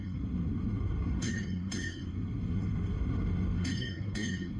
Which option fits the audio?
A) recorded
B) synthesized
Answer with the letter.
B